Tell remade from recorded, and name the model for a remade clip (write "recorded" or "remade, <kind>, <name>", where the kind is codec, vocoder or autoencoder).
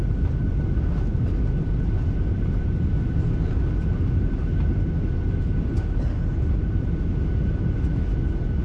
recorded